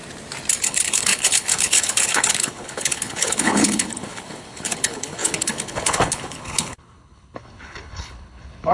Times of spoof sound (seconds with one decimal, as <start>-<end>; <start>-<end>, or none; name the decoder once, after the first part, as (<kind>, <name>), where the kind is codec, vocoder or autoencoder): 0.6-8.7 (codec, HILCodec)